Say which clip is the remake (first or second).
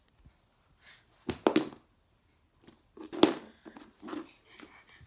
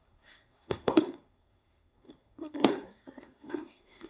second